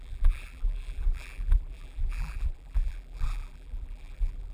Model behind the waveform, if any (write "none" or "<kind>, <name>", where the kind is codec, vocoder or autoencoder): vocoder, BigVGAN v2